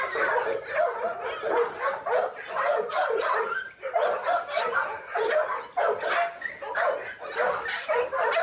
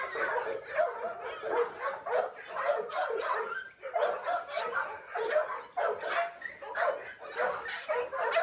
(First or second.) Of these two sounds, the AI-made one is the first